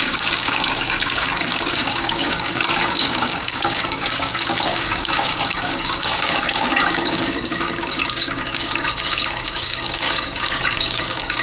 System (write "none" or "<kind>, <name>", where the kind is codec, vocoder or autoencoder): codec, DAC